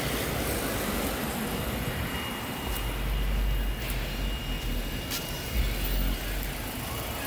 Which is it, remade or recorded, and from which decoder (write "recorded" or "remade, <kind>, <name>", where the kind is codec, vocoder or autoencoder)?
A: recorded